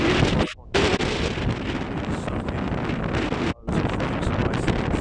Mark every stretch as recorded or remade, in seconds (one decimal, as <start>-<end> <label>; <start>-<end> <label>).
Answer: 0.0-5.0 recorded

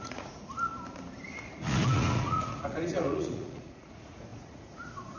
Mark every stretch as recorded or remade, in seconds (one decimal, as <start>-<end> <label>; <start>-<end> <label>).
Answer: 0.0-0.7 remade; 0.7-1.4 recorded; 1.4-5.2 remade

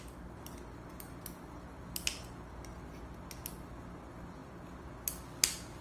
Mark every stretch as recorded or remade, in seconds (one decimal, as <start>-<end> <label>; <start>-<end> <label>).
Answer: 0.0-5.8 recorded

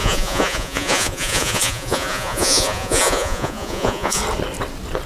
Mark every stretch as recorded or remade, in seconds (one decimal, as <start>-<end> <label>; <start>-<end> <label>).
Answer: 0.0-4.2 remade; 4.2-5.1 recorded

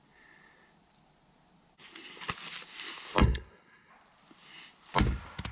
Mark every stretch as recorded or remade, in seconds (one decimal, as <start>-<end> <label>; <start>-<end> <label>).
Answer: 0.0-3.2 recorded; 3.2-3.9 remade; 3.9-5.5 recorded

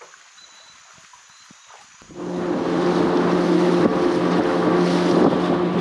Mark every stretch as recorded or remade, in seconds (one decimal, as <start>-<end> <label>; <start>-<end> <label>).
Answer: 0.0-1.1 recorded; 1.1-2.8 remade; 2.8-5.8 recorded